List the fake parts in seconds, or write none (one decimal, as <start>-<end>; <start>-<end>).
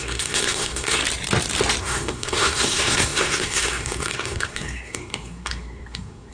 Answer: 0.0-1.0; 1.8-6.3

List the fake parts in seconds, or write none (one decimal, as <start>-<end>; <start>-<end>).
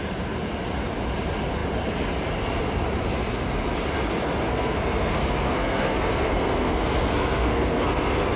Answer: 4.5-8.4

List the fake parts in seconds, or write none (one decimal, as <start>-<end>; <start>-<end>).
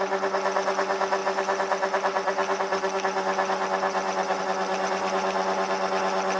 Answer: none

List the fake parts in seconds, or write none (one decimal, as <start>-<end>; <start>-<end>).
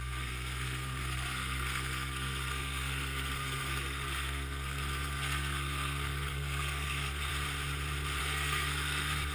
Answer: 0.0-7.3; 8.2-9.3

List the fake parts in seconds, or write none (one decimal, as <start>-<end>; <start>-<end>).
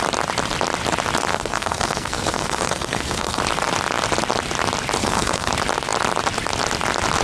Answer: 1.3-3.4; 5.0-5.5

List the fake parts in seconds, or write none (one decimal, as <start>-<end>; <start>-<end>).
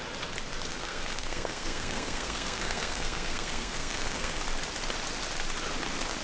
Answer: 0.7-4.4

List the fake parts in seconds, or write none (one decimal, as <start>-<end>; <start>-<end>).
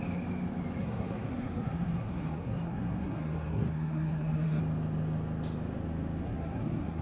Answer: 0.8-4.6; 6.2-7.0